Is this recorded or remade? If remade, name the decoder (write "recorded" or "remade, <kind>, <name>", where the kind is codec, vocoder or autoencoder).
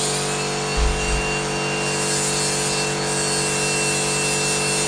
recorded